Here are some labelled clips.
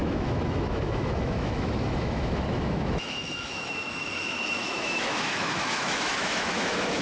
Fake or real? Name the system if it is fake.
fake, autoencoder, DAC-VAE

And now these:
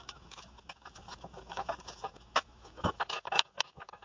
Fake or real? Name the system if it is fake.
fake, autoencoder, DAC-VAE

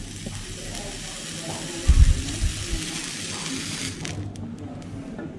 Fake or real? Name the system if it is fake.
real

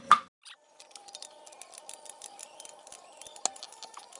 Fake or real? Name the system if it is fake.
real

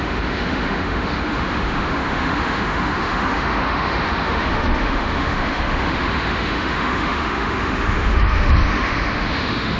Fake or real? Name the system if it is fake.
fake, autoencoder, DAC-VAE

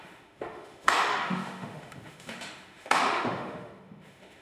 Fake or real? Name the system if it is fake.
fake, autoencoder, DAC-VAE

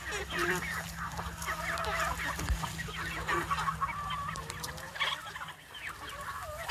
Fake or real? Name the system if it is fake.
real